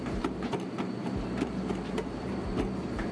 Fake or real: fake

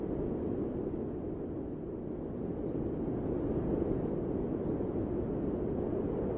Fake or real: real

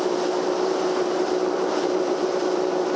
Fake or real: fake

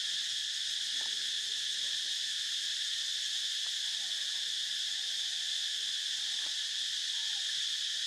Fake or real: real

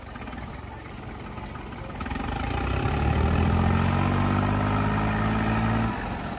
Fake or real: real